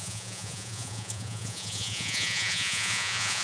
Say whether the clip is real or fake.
fake